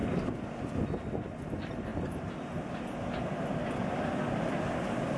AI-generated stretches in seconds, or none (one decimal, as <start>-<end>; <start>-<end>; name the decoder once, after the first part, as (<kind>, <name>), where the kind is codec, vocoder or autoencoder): none